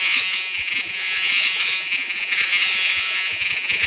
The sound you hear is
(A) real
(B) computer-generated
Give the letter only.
B